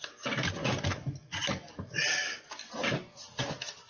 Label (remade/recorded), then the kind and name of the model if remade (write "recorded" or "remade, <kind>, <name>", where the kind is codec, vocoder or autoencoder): recorded